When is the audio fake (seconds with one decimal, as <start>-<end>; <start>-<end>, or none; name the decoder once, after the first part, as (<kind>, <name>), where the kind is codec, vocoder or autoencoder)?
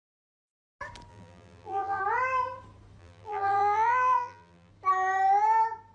1.1-2.0 (vocoder, BigVGAN v2); 3.0-4.7